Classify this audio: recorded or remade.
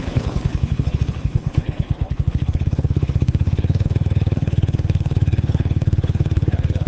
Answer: remade